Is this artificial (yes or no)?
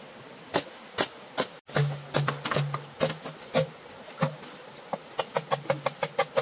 no